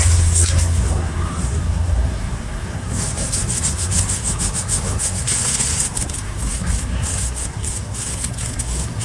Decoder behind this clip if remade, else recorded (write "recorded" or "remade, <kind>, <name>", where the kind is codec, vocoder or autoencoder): remade, codec, SNAC